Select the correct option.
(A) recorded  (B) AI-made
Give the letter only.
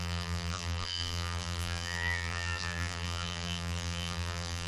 B